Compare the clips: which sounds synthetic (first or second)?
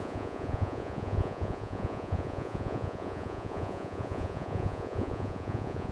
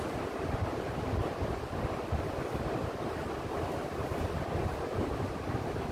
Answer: first